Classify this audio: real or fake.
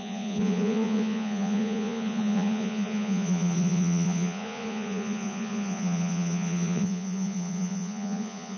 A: fake